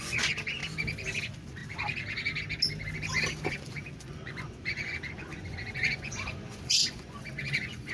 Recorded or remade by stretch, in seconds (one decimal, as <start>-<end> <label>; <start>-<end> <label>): 0.0-0.6 remade; 0.6-1.2 recorded; 1.2-1.6 remade; 1.6-3.5 recorded; 3.5-7.9 remade